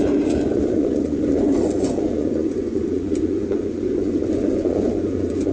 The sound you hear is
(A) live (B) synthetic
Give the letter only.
B